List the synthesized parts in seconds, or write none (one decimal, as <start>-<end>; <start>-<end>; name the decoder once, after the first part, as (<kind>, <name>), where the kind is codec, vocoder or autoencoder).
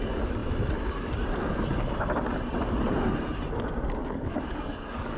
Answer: 4.0-5.2 (codec, DAC)